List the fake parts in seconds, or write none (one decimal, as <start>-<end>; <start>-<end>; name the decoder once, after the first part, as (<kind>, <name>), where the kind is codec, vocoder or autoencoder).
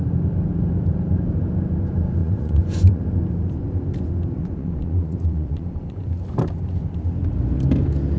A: 2.2-3.0 (vocoder, Vocos); 4.4-6.2